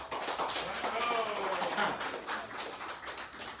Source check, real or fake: real